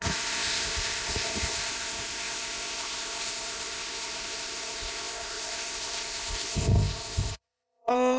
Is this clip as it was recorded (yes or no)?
no